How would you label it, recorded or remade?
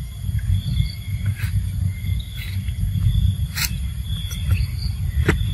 recorded